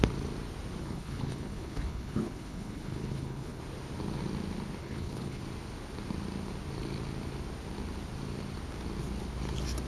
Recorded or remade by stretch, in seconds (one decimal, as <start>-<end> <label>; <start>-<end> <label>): 0.0-0.8 recorded; 0.8-3.6 remade; 3.6-4.8 recorded; 4.8-5.4 remade; 5.4-9.9 recorded